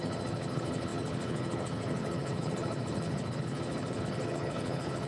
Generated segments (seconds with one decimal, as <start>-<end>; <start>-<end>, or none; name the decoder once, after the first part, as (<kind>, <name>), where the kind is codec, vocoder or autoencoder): 0.0-5.1 (codec, HILCodec)